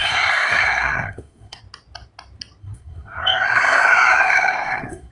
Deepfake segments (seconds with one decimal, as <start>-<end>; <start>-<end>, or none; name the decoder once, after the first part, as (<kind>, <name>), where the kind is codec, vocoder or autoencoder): 0.0-1.6 (codec, SNAC); 2.6-5.1

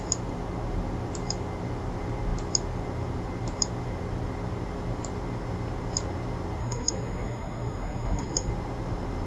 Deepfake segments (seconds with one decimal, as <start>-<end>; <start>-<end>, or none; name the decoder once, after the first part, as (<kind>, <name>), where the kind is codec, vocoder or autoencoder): 6.6-8.5 (codec, SNAC)

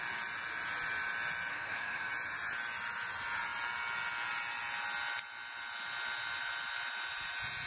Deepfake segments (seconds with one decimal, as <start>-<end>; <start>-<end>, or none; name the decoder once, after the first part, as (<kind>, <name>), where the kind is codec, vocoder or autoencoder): 1.5-2.1 (codec, SNAC)

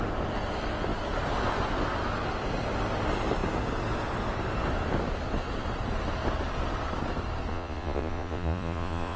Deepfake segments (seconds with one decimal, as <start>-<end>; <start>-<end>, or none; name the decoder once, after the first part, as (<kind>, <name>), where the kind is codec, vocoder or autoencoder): 7.5-9.2 (vocoder, Vocos)

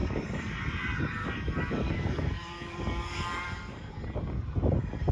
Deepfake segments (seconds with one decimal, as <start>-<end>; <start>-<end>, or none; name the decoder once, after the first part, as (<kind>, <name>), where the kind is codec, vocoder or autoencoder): 0.0-0.6 (codec, DAC); 1.2-3.9

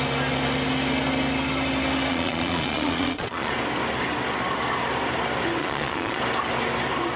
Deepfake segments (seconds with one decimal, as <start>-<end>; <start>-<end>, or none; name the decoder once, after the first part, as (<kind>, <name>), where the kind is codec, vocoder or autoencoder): 2.1-3.5 (vocoder, Vocos); 5.6-6.2

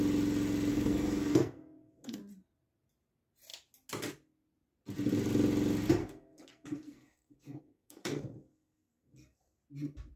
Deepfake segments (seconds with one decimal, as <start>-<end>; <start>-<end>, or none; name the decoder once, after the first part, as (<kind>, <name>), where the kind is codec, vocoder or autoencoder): 0.7-2.2 (codec, SNAC); 6.0-9.6